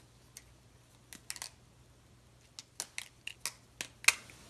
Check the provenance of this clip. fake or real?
real